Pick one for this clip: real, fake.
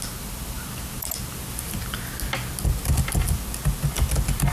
real